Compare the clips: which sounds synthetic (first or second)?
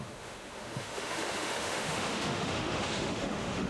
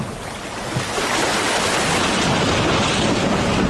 first